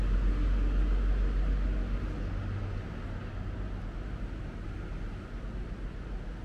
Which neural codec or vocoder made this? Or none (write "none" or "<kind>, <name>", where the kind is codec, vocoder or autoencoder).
none